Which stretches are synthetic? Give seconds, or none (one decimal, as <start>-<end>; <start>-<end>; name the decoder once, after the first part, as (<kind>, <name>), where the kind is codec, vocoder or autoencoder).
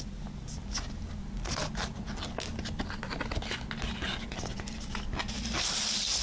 none